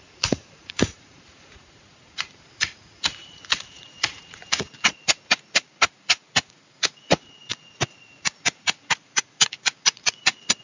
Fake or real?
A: fake